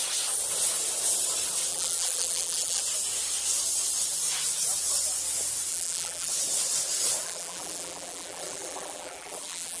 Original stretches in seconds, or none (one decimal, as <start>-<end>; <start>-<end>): 0.0-1.7; 2.8-5.7; 6.3-7.2